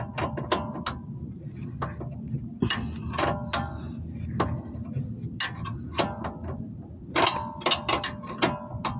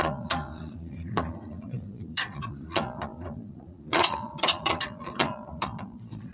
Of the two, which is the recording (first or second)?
first